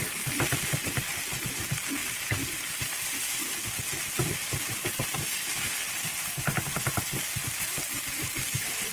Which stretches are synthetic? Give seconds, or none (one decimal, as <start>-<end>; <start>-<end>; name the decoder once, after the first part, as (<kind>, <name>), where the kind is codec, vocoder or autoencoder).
none